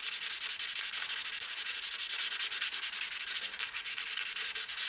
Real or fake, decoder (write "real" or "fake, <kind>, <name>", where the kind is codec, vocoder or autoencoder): real